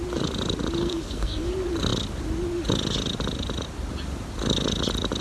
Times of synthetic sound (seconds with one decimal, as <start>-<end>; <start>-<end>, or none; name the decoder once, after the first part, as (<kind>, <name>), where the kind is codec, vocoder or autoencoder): 0.8-1.5 (codec, SNAC)